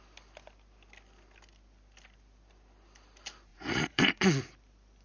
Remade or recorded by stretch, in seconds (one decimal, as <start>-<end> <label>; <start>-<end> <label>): 0.0-3.5 recorded; 3.5-4.4 remade; 4.4-5.0 recorded